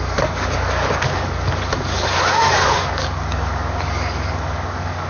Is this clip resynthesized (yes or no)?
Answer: yes